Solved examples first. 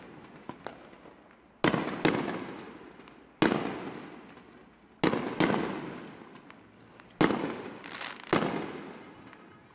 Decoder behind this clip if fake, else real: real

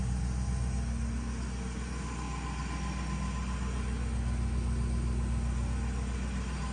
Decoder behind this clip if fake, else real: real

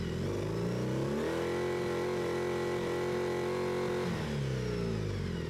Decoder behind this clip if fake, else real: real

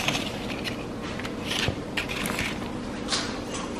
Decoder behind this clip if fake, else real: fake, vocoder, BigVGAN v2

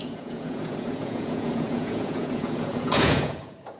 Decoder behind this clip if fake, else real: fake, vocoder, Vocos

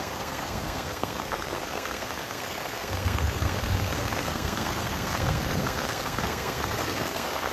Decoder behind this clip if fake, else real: fake, codec, SNAC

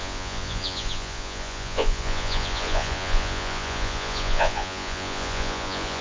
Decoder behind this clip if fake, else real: fake, vocoder, Vocos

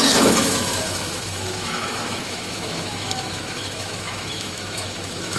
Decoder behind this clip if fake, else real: fake, autoencoder, DAC-VAE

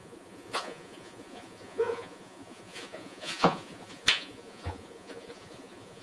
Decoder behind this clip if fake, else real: fake, vocoder, Vocos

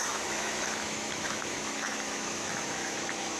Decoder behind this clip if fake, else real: fake, autoencoder, DAC-VAE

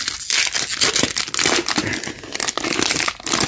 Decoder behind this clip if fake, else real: real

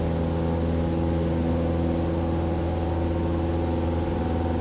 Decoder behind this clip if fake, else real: real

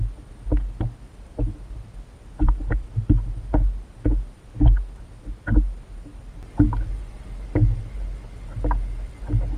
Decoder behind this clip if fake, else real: real